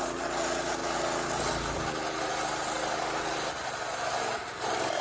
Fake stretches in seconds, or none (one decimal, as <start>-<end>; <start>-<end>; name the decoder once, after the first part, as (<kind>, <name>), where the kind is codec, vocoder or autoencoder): none